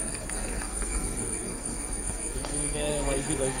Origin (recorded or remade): remade